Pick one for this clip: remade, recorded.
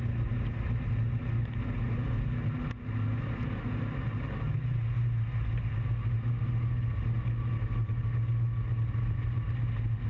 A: recorded